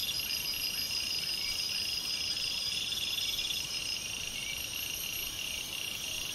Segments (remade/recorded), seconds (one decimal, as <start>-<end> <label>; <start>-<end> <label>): 0.0-4.4 remade; 4.4-5.6 recorded; 5.6-6.3 remade